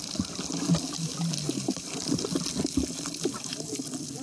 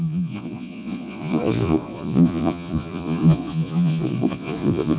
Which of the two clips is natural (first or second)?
first